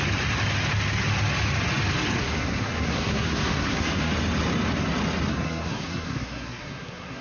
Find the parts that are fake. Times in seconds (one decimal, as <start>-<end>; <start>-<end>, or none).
2.2-4.1; 5.3-7.2